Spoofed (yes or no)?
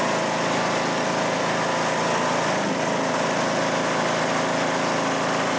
no